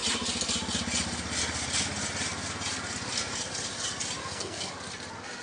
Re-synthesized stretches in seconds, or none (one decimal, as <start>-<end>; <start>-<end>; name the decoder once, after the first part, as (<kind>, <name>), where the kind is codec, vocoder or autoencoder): 4.2-4.7 (codec, SNAC)